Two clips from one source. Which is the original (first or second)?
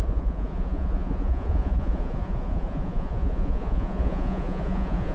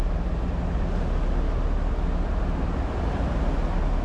second